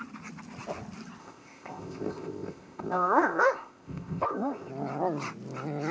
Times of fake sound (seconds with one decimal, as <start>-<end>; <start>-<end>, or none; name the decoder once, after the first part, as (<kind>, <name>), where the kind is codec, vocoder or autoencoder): 1.2-4.7 (codec, ZipCodec)